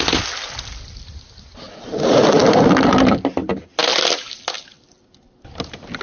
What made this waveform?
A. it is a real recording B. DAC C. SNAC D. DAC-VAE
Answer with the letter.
A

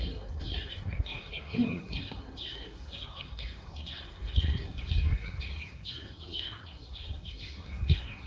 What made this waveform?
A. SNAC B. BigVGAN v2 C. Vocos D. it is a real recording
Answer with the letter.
A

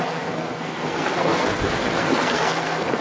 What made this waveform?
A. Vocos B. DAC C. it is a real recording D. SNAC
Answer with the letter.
D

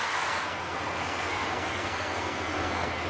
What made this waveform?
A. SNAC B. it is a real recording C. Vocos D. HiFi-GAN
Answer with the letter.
A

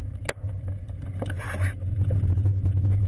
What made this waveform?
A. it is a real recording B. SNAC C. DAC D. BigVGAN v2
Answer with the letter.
A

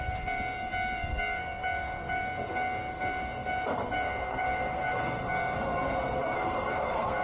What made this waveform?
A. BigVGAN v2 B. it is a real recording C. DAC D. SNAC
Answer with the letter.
D